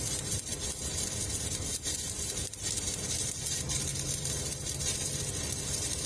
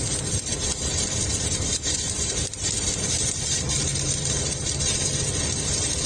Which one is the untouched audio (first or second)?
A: first